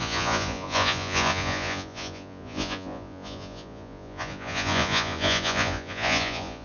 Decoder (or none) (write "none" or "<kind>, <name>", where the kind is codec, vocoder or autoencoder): vocoder, Vocos